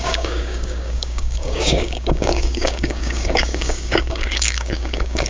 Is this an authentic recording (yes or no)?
no